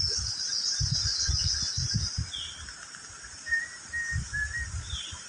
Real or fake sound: real